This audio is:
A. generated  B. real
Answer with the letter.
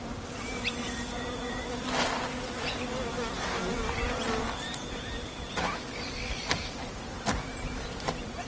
B